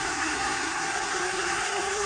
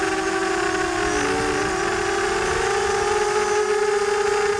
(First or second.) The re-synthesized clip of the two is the first